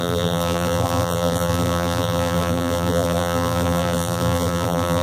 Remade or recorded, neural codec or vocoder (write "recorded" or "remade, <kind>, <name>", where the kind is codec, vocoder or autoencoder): remade, vocoder, BigVGAN v2